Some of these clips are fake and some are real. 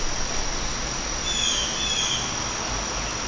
real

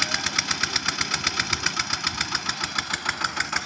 real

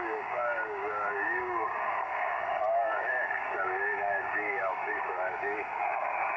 fake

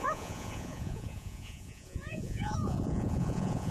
fake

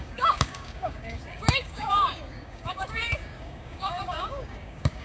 fake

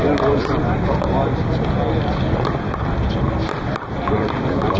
real